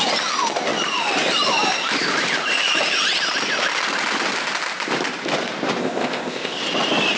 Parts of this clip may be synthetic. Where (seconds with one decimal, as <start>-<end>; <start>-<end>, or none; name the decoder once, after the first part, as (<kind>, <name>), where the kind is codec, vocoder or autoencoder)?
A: 5.8-6.6 (codec, ZipCodec)